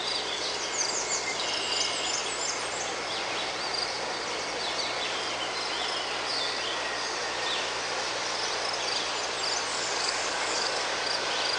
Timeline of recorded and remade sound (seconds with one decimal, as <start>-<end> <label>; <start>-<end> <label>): 0.0-9.7 recorded; 9.7-10.9 remade; 10.9-11.6 recorded